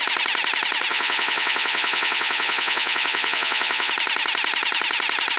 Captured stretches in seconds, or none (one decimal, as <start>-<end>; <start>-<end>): 0.0-0.9; 3.9-5.4